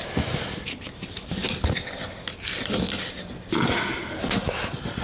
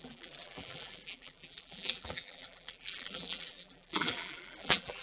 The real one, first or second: first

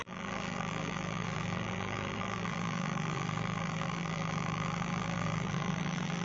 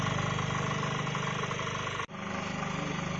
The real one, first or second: second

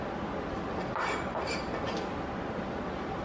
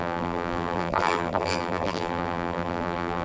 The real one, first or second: first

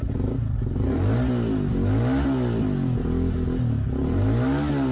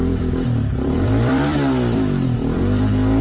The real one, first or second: first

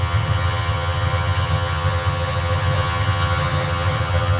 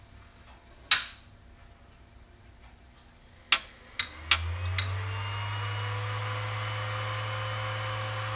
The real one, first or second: second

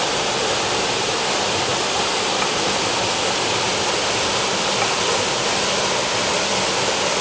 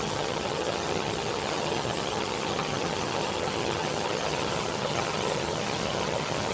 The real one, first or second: first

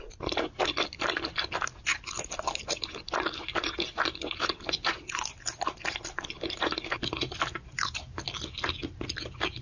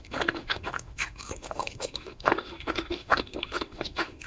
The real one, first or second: first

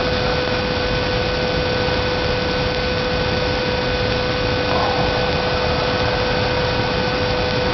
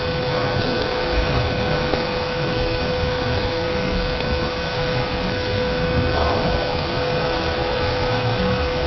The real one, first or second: first